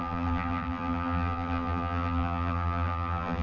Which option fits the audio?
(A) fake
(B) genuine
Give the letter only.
A